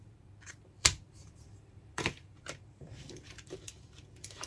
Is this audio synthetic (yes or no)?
yes